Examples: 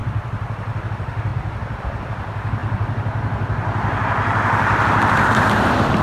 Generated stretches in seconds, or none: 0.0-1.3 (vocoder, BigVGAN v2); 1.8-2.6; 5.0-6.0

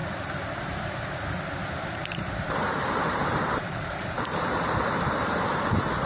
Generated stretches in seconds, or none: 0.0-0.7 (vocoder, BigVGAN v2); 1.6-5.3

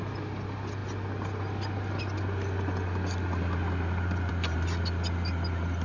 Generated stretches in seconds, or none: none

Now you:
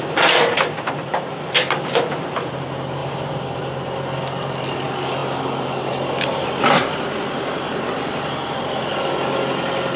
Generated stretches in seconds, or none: 3.0-3.7 (vocoder, BigVGAN v2)

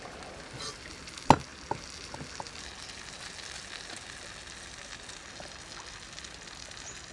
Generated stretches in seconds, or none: none